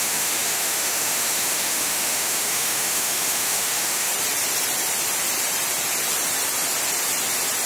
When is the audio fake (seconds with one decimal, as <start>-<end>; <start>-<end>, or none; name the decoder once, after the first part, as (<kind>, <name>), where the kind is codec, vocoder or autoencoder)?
0.0-4.1 (autoencoder, DAC-VAE)